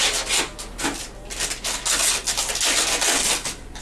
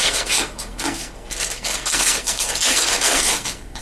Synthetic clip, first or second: second